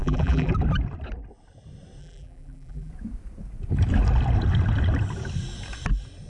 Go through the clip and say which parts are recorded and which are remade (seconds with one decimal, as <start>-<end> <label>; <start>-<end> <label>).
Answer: 0.0-0.5 remade; 0.5-2.0 recorded; 2.0-2.9 remade; 2.9-6.3 recorded